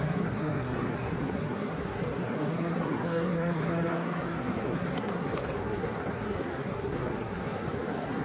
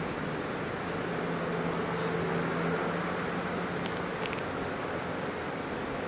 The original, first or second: second